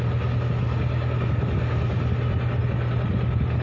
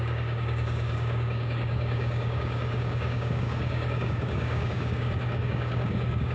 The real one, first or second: first